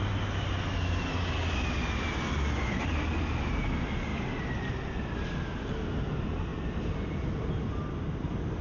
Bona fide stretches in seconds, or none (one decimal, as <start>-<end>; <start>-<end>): 0.0-8.6